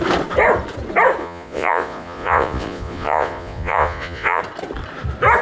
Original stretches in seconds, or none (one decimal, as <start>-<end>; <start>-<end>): 0.0-1.2; 4.4-5.4